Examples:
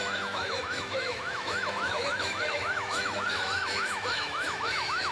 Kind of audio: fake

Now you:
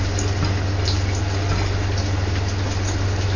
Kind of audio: real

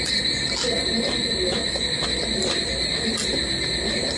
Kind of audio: real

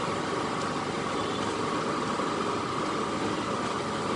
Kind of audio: real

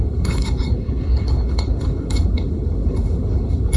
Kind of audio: fake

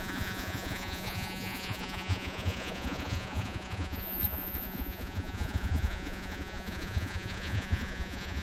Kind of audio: fake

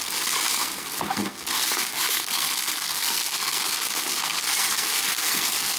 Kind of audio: fake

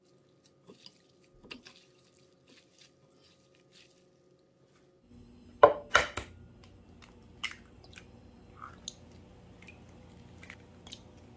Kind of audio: real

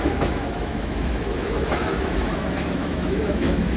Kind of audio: fake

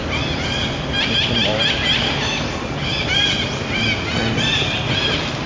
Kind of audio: real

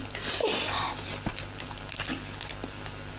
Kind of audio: real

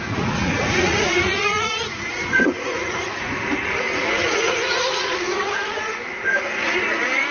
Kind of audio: fake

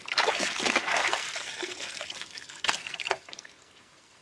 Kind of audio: fake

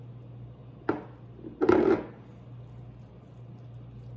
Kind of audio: real